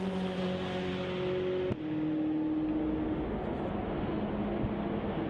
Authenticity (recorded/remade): recorded